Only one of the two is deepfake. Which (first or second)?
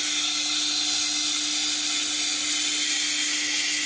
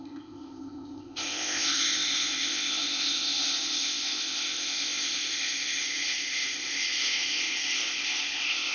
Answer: second